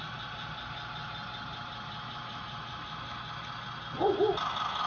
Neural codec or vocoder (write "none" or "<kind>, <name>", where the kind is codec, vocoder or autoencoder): none